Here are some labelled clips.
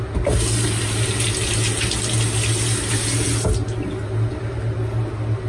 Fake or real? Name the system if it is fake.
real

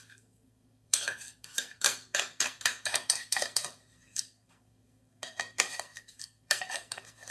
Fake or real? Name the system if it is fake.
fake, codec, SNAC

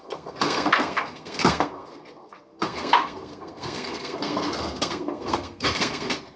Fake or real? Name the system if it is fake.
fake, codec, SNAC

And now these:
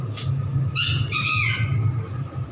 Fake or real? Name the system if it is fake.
real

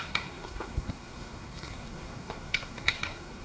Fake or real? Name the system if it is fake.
fake, codec, SNAC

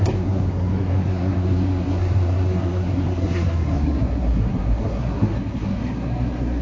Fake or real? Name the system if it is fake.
fake, codec, SNAC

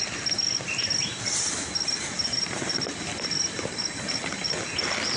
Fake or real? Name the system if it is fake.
real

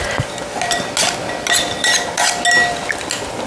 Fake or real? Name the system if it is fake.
real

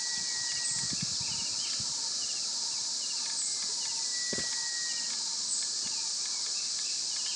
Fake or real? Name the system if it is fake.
real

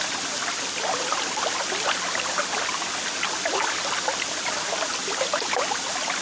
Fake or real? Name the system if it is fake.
real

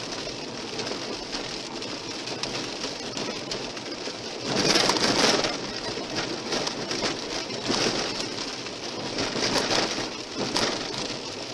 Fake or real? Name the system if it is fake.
real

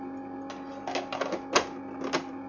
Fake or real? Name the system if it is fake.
real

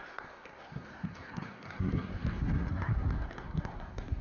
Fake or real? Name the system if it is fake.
fake, codec, SNAC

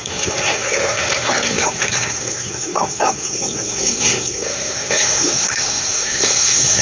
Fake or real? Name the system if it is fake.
fake, codec, SNAC